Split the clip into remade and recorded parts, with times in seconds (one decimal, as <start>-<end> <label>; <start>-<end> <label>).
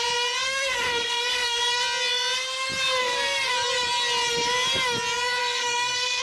0.0-0.4 recorded; 0.4-1.6 remade; 1.6-3.0 recorded; 3.0-3.5 remade; 3.5-5.4 recorded; 5.4-6.2 remade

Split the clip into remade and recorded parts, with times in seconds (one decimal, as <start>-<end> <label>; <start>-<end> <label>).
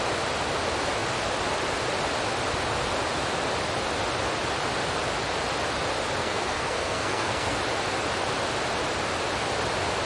0.0-6.2 recorded; 6.2-7.6 remade; 7.6-10.1 recorded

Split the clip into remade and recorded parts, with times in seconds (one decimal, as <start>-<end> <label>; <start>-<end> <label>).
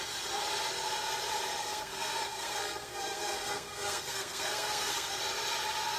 0.0-1.6 recorded; 1.6-5.2 remade; 5.2-6.0 recorded